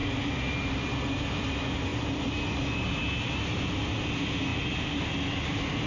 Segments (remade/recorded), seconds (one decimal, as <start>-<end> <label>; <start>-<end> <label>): 0.0-5.9 recorded